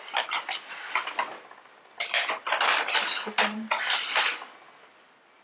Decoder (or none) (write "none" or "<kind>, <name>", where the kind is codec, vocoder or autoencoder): none